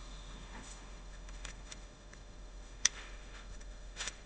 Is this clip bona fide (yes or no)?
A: no